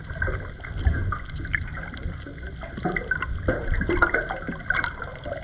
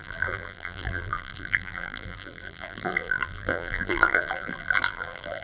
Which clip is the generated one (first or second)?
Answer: second